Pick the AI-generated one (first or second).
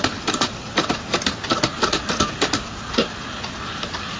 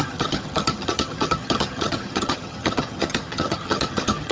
second